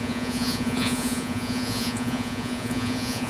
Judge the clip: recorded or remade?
remade